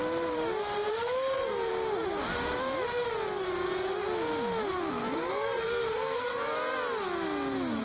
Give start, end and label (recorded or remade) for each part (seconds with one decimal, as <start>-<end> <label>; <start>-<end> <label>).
0.0-0.9 recorded; 0.9-1.7 remade; 1.7-4.9 recorded; 4.9-6.3 remade; 6.3-7.8 recorded